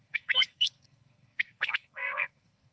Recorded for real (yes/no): no